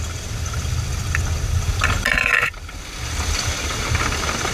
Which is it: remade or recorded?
recorded